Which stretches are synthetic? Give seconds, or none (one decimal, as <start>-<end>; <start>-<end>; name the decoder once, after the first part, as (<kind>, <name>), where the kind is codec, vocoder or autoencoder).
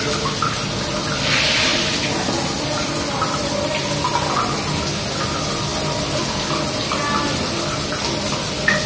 none